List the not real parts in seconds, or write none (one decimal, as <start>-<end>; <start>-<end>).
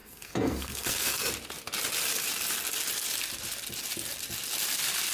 0.0-1.3